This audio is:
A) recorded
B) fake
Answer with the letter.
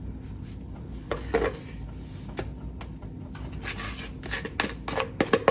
A